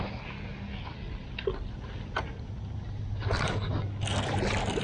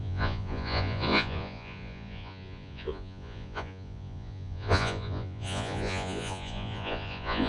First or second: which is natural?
first